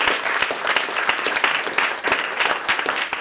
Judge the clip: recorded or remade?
recorded